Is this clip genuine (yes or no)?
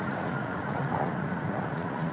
no